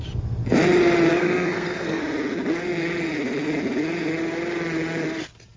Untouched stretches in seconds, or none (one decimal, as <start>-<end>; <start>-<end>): 0.0-1.1; 2.0-5.6